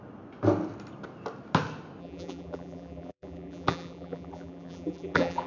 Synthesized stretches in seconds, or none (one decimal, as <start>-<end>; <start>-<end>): 2.0-5.5